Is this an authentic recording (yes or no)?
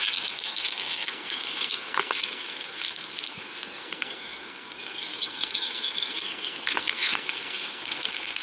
no